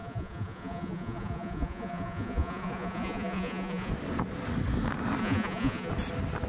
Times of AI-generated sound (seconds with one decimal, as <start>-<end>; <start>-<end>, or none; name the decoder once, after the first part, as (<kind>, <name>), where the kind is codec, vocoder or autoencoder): 0.0-3.9 (vocoder, Vocos); 5.2-5.9